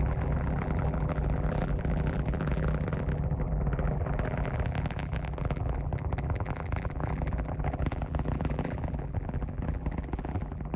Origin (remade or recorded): remade